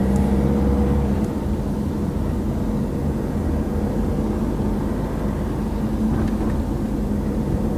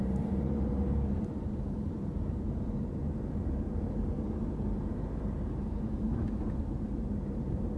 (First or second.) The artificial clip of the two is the second